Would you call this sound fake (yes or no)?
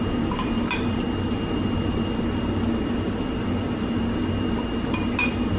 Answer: no